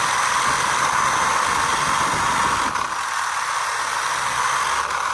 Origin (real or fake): real